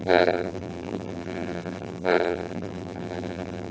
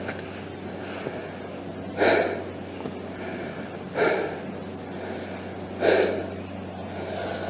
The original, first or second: second